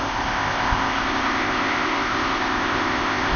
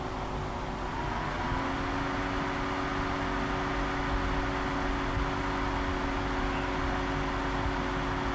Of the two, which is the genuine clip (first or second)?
second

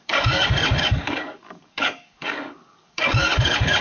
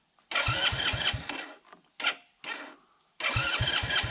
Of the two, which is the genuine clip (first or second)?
second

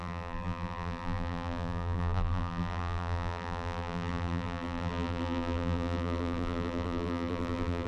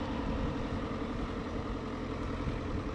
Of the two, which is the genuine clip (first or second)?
second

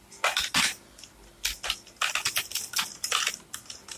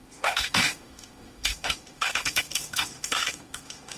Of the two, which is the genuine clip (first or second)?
first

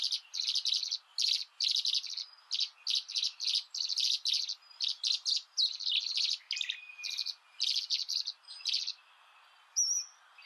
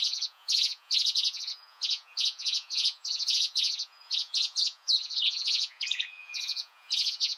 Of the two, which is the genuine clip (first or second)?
first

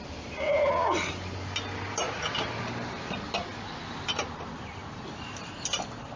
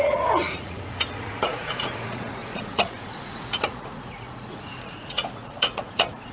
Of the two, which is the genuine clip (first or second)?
first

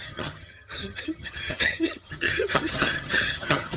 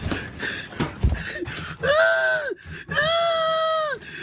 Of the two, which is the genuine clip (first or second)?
second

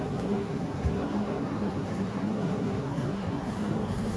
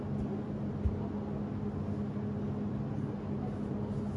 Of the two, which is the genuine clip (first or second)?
second